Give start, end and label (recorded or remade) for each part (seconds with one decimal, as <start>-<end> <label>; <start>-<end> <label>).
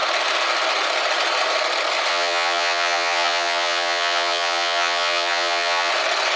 0.0-2.1 recorded; 2.1-5.9 remade; 5.9-6.4 recorded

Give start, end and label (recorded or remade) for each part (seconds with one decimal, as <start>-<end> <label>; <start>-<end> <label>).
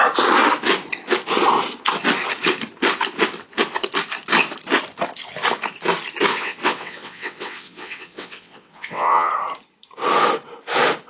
0.0-6.3 recorded; 6.3-9.3 remade; 9.3-11.1 recorded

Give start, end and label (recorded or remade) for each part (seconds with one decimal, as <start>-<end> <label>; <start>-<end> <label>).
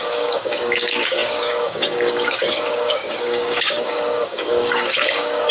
0.0-5.5 remade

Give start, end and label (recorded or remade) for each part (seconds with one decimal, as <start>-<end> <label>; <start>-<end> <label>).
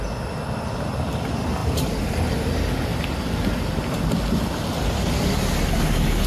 0.0-1.6 recorded; 1.6-2.1 remade; 2.1-2.9 recorded; 2.9-4.1 remade; 4.1-6.3 recorded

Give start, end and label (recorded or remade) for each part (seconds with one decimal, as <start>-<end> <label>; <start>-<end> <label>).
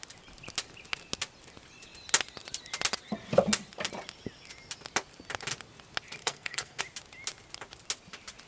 0.0-6.2 recorded; 6.2-6.8 remade; 6.8-8.5 recorded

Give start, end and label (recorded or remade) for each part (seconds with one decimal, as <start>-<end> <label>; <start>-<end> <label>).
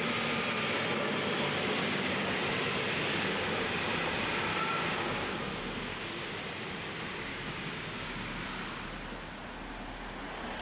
0.0-1.8 recorded; 1.8-2.3 remade; 2.3-4.5 recorded; 4.5-5.4 remade; 5.4-5.9 recorded; 5.9-6.4 remade; 6.4-7.3 recorded; 7.3-8.4 remade; 8.4-10.6 recorded